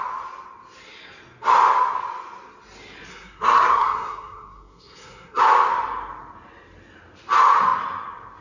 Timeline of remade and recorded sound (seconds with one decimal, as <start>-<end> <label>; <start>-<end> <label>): 0.0-3.1 recorded; 3.1-5.4 remade; 5.4-8.4 recorded